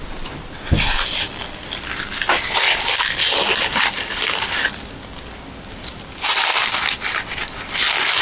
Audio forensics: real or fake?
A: real